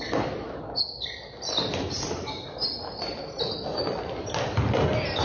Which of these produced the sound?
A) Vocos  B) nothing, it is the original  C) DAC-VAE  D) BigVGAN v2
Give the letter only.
B